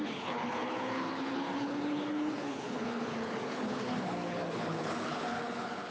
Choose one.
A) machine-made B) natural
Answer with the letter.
A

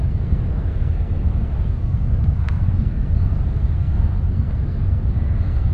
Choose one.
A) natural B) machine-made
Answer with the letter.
B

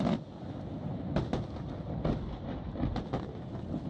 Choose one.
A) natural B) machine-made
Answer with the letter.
A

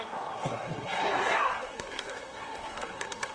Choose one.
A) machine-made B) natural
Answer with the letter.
A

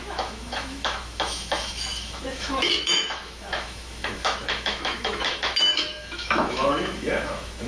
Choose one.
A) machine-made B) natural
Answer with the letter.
A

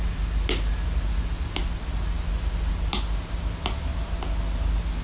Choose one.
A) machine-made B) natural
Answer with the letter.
B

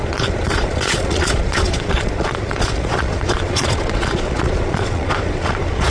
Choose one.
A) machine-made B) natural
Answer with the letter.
A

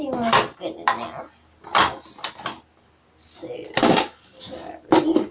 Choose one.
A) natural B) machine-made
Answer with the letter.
A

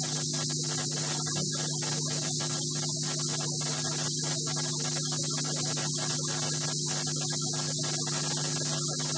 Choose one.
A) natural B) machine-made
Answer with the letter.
A